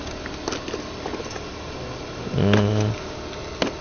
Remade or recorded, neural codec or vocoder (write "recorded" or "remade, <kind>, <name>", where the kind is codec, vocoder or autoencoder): recorded